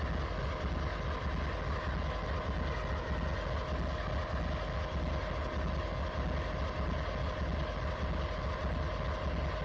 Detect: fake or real real